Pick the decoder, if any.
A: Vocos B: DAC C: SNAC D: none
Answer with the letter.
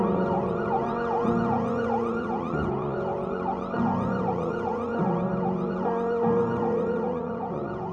A